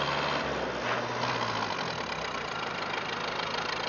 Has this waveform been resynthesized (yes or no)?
no